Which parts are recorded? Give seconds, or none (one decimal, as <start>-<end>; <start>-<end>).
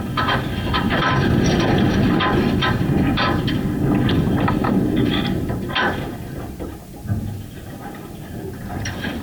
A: 0.0-4.6; 5.2-9.2